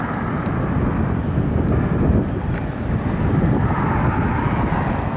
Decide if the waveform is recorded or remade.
recorded